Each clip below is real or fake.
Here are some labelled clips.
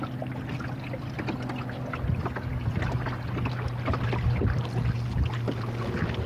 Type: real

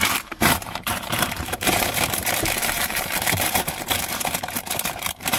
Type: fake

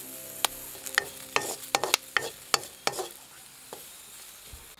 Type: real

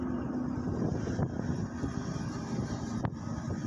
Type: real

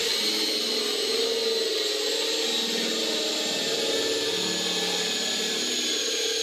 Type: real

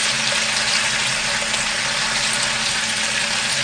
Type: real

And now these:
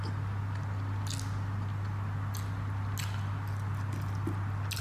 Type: real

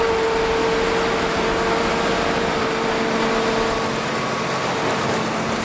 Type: real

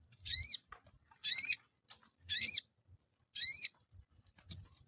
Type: fake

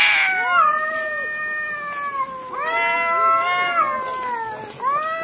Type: real